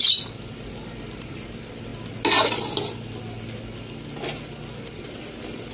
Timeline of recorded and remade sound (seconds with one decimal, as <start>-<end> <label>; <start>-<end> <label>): 0.0-5.7 recorded